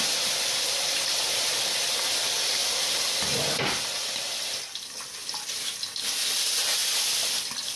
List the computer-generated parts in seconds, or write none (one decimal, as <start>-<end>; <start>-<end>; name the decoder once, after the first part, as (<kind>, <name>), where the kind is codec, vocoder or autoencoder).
none